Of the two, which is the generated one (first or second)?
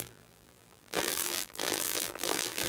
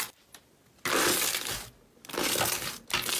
first